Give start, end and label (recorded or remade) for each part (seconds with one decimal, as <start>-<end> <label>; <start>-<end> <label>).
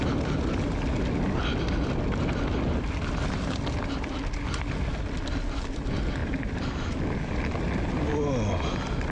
0.0-9.1 recorded